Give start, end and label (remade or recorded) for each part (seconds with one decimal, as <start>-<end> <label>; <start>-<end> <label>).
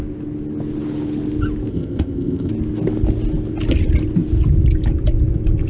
0.0-1.7 recorded; 1.7-2.5 remade; 2.5-5.7 recorded